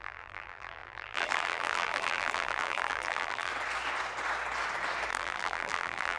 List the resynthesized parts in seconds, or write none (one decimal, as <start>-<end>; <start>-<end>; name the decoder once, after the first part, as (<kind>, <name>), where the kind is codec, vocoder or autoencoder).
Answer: 0.0-3.5 (vocoder, BigVGAN v2); 5.1-6.2